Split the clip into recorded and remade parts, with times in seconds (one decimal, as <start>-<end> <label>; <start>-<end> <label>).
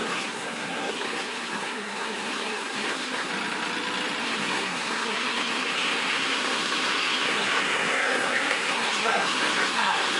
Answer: 0.0-3.3 remade; 3.3-4.2 recorded; 4.2-10.2 remade